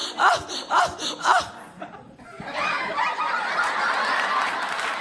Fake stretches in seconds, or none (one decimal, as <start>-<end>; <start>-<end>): none